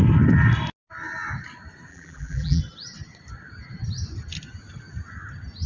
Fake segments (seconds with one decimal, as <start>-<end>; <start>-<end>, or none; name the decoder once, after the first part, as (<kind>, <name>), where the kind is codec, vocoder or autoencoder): 1.9-2.6 (vocoder, BigVGAN v2)